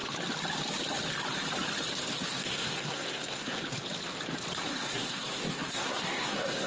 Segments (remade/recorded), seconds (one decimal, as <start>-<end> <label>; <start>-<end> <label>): 0.0-2.3 recorded; 2.3-3.6 remade; 3.6-4.7 recorded; 4.7-6.7 remade